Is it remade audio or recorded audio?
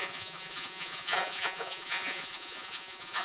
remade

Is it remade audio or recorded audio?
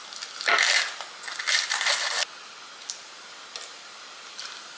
recorded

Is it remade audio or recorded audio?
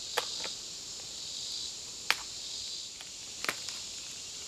recorded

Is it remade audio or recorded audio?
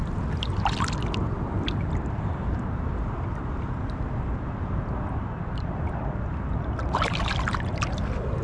remade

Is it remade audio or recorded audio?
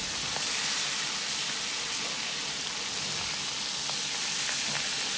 recorded